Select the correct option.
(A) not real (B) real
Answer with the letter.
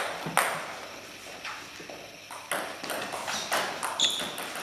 B